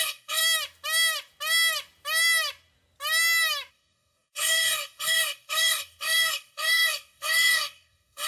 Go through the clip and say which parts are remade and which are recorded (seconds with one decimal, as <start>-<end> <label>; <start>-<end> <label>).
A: 0.0-0.4 remade; 0.4-3.7 recorded; 3.7-8.3 remade